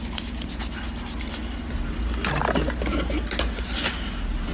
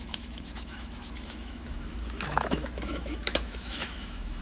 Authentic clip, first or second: first